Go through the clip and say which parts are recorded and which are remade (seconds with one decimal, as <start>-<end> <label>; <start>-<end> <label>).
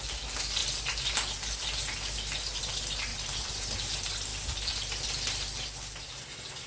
0.0-3.1 recorded; 3.1-3.8 remade; 3.8-6.7 recorded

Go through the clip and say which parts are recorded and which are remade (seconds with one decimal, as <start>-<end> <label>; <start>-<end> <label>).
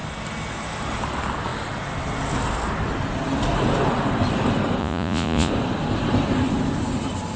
0.0-4.8 recorded; 4.8-5.5 remade; 5.5-7.4 recorded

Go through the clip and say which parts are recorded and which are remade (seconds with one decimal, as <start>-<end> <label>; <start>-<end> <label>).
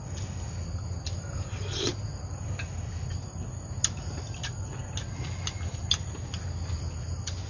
0.0-7.5 recorded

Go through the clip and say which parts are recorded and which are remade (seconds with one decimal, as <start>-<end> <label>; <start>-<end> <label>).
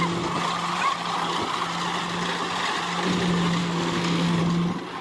0.0-3.6 recorded; 3.6-4.4 remade; 4.4-5.0 recorded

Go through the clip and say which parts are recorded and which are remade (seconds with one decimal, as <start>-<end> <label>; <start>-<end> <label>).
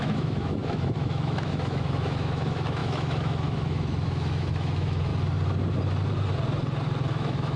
0.0-5.1 remade; 5.1-7.1 recorded; 7.1-7.6 remade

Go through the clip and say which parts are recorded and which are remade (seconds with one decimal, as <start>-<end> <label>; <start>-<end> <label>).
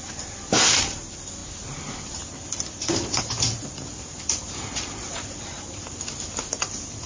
0.0-1.4 remade; 1.4-3.2 recorded; 3.2-7.1 remade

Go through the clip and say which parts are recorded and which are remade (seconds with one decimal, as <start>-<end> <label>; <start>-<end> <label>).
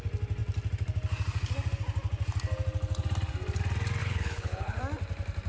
0.0-4.0 recorded; 4.0-4.8 remade; 4.8-5.5 recorded